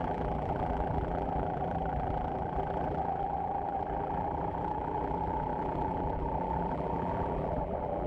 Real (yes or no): no